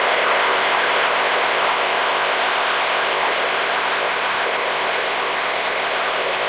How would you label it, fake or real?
fake